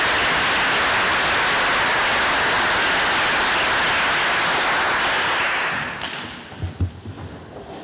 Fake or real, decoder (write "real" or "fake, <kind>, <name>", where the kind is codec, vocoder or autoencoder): real